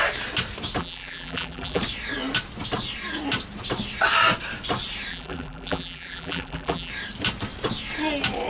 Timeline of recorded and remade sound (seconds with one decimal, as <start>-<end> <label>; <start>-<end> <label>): 0.0-0.8 recorded; 0.8-1.8 remade; 1.8-5.1 recorded; 5.1-6.9 remade; 6.9-8.5 recorded